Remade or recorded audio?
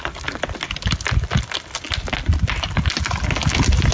recorded